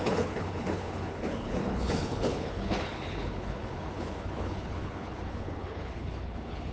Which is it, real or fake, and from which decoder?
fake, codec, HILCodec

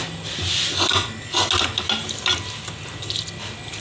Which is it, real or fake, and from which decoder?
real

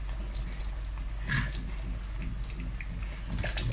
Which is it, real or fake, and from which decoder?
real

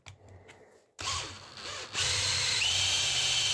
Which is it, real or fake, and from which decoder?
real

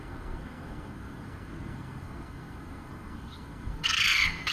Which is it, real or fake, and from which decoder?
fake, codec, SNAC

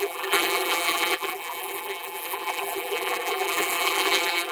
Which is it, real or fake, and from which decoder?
fake, vocoder, BigVGAN v2